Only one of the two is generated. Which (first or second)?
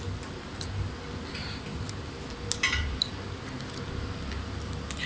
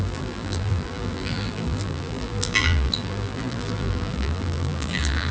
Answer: second